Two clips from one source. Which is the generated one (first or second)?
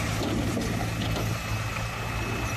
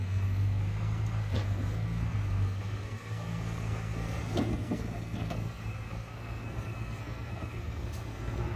second